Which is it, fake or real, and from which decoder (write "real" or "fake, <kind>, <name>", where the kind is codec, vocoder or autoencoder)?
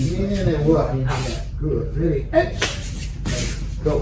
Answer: real